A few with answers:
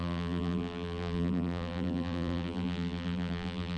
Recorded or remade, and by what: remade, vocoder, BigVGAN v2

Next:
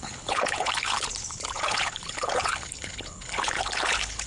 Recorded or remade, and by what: remade, codec, HILCodec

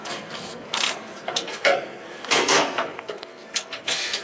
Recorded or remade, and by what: remade, codec, SNAC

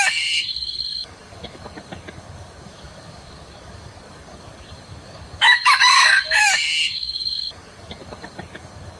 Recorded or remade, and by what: remade, codec, DAC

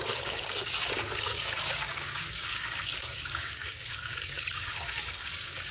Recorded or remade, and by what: remade, codec, DAC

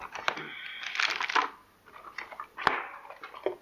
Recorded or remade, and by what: recorded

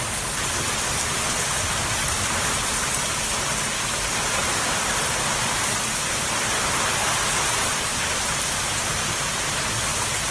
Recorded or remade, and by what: recorded